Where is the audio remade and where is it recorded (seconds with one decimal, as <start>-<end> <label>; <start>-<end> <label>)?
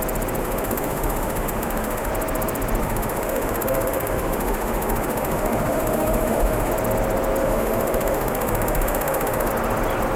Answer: 0.0-0.4 recorded; 0.4-2.1 remade; 2.1-2.8 recorded; 2.8-6.7 remade; 6.7-7.4 recorded; 7.4-9.5 remade; 9.5-10.2 recorded